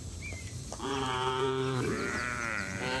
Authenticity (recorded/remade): remade